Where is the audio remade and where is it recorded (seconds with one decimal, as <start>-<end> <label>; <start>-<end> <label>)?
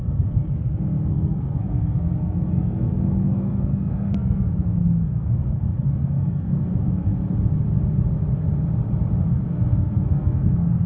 0.0-7.1 remade; 7.1-9.3 recorded; 9.3-10.9 remade